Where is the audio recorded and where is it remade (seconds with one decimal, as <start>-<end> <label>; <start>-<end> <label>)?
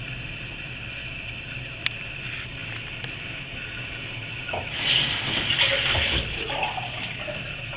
0.0-7.8 recorded